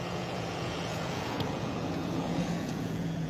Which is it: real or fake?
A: fake